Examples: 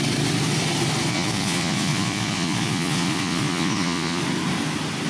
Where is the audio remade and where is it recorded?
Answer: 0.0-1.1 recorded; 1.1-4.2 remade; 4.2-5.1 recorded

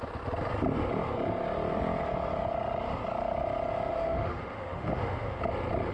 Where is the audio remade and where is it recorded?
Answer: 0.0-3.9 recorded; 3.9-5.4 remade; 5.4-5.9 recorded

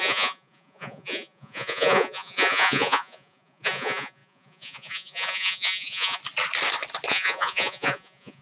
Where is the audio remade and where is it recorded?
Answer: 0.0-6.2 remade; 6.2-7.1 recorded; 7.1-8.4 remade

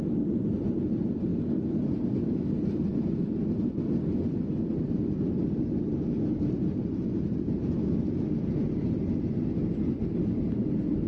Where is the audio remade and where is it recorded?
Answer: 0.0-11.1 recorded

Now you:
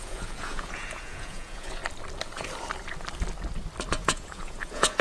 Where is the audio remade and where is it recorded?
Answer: 0.0-1.8 remade; 1.8-3.9 recorded; 3.9-5.0 remade

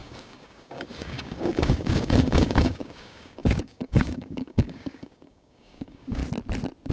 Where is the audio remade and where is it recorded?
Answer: 0.0-6.2 remade; 6.2-6.9 recorded

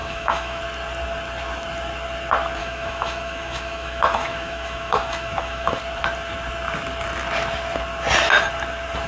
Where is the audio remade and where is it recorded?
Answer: 0.0-0.6 remade; 0.6-2.6 recorded; 2.6-5.8 remade; 5.8-9.1 recorded

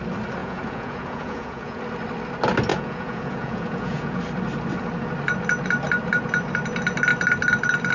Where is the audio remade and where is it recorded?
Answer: 0.0-0.4 recorded; 0.4-1.8 remade; 1.8-2.7 recorded; 2.7-4.2 remade; 4.2-7.9 recorded